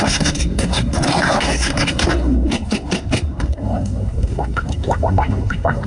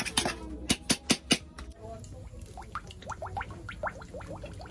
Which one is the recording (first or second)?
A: second